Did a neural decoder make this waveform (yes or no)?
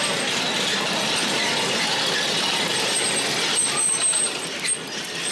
no